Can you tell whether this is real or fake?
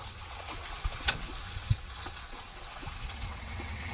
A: fake